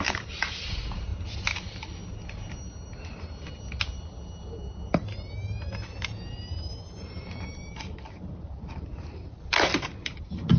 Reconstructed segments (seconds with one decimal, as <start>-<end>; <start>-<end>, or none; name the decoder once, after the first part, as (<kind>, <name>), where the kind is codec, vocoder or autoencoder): 0.0-1.1 (vocoder, BigVGAN v2); 1.6-2.0; 6.9-10.6

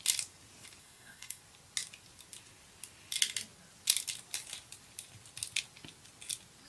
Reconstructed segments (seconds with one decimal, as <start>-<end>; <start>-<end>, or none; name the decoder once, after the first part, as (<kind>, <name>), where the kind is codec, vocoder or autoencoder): 0.8-1.4 (codec, SNAC)